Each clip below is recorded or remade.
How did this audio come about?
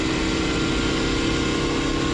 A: recorded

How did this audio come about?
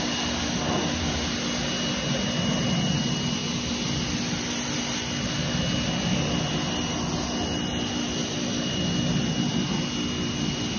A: recorded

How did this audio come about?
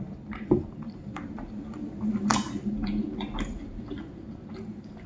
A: remade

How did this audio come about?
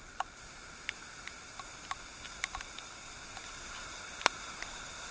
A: recorded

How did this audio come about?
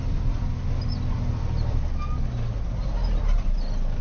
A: recorded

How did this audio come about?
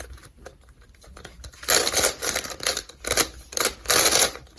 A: recorded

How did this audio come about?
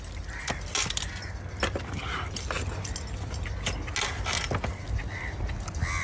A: recorded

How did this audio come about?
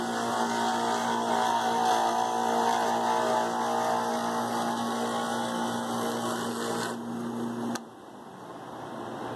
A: recorded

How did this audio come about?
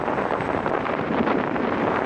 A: remade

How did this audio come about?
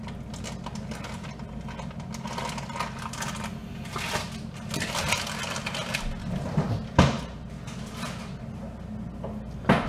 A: recorded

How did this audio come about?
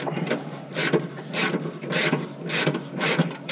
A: recorded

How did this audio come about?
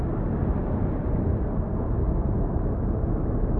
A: recorded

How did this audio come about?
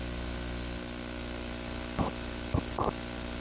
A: recorded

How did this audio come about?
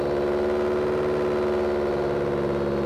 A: recorded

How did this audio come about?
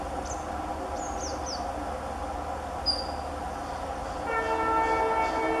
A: recorded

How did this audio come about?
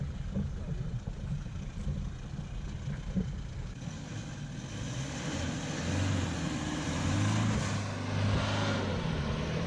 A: recorded